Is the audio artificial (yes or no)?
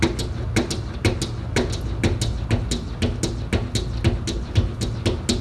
no